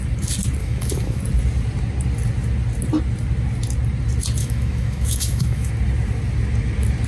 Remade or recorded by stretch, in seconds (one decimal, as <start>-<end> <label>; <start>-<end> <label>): 0.0-0.6 recorded; 0.6-1.2 remade; 1.2-4.4 recorded; 4.4-5.7 remade; 5.7-7.1 recorded